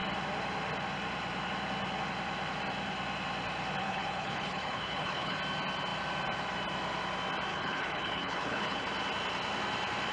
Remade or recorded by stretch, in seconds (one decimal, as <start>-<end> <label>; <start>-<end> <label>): 0.0-3.8 recorded; 3.8-5.4 remade; 5.4-7.5 recorded; 7.5-8.8 remade; 8.8-10.1 recorded